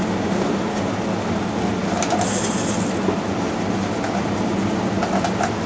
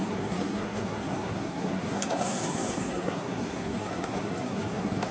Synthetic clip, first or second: second